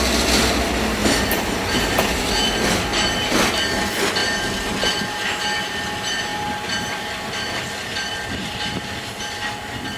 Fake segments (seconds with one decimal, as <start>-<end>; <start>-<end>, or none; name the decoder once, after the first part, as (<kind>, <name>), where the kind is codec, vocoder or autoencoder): 1.0-2.5 (vocoder, BigVGAN v2); 2.9-3.5; 6.3-8.7